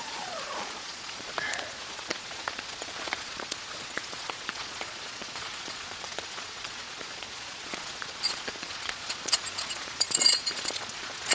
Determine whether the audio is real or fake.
fake